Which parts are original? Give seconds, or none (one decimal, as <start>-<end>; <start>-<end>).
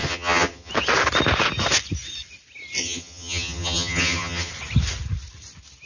0.7-2.8; 4.5-5.9